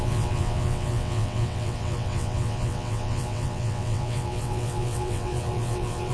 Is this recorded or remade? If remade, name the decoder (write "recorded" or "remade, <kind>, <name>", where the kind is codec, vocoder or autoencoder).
remade, vocoder, WaveNeXt